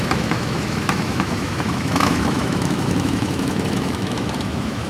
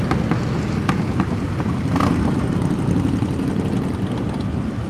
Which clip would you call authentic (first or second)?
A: second